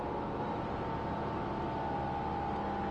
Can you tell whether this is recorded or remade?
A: recorded